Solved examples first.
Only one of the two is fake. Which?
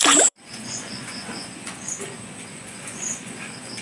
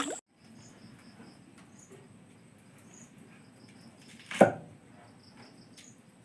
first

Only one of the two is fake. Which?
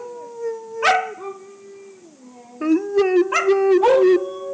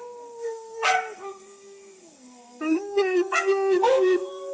second